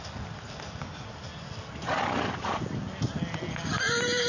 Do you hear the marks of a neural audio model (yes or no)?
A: no